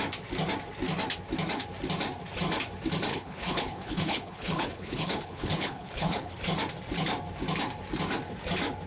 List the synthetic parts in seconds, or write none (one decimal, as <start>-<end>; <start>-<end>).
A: 3.1-6.4